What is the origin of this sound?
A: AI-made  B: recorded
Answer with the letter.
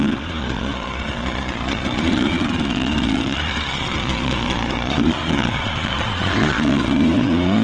A